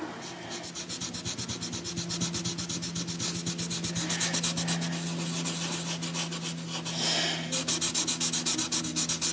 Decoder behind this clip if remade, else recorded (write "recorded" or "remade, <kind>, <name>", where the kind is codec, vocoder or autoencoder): recorded